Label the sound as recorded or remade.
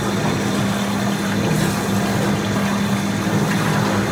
recorded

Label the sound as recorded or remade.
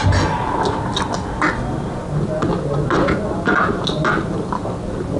recorded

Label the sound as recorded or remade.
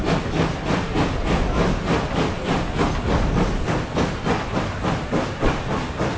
recorded